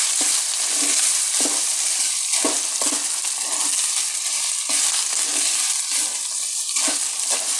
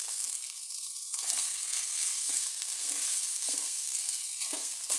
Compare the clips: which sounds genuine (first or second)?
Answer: first